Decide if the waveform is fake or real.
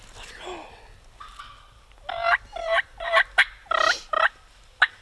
real